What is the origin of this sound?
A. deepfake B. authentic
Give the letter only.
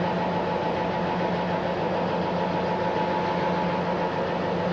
B